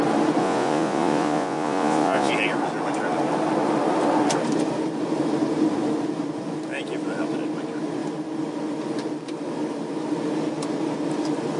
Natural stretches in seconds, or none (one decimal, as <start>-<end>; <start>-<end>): 0.0-0.4; 2.3-11.6